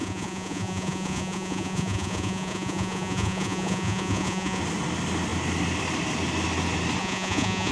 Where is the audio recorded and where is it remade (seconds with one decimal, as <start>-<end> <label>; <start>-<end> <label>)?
0.0-4.6 remade; 4.6-7.0 recorded; 7.0-7.7 remade